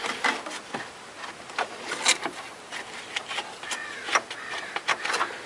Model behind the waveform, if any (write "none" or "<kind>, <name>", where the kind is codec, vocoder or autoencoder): none